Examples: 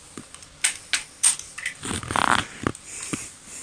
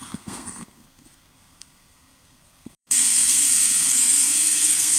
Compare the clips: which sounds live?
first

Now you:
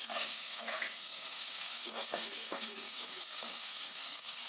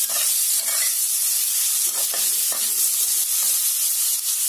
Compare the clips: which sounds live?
second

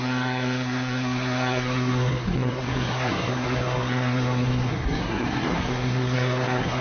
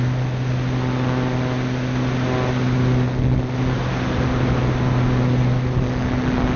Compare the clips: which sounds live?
second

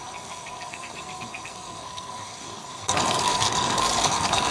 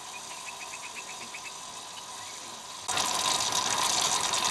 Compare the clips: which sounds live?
second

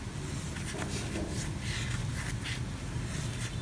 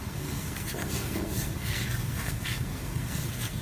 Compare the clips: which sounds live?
first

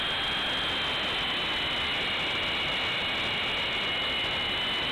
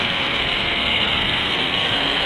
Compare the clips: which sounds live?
first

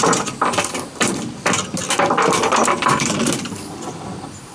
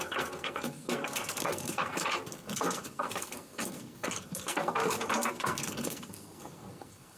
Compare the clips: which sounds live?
first